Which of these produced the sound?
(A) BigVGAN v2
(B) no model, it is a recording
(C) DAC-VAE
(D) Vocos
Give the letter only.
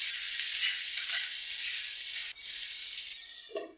B